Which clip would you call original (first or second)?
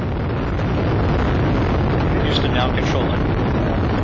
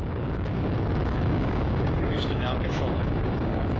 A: first